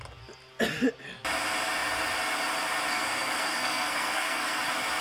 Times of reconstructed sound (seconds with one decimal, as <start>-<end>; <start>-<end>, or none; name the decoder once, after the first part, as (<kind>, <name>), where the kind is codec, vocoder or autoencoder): 2.9-4.6 (codec, SNAC)